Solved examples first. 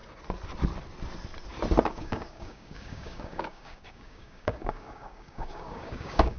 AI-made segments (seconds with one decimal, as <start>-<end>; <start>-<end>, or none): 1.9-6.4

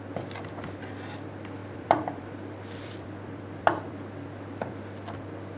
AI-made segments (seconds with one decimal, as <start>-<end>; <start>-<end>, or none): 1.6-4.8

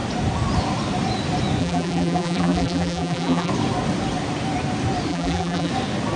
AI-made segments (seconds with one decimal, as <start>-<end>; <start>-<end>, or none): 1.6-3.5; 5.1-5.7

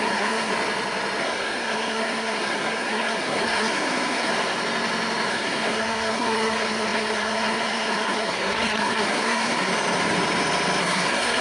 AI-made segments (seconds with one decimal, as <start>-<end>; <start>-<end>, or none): 0.0-0.5; 1.2-4.3; 5.3-9.7; 10.8-11.4

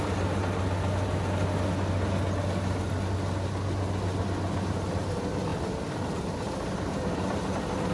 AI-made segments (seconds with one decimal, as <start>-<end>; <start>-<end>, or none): 5.5-6.1

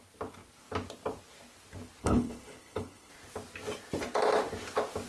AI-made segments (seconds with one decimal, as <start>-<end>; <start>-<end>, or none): 2.0-3.1

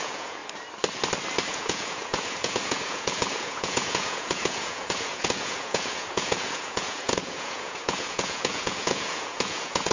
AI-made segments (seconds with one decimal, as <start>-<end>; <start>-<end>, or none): 0.0-0.4; 1.5-9.9